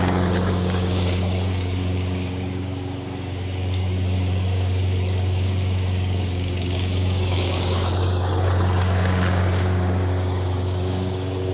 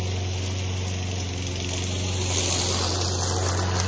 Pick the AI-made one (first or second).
first